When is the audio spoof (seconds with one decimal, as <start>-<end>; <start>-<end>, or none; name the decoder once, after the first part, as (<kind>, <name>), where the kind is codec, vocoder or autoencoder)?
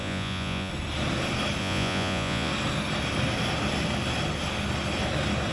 0.0-0.7 (vocoder, Vocos); 1.6-2.5